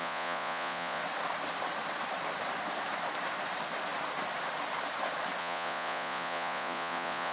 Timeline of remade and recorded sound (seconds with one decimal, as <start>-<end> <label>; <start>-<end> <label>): 0.0-1.0 remade; 1.0-5.4 recorded; 5.4-7.3 remade